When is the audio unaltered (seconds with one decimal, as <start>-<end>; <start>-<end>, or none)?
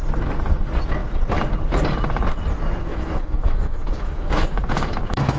0.0-2.9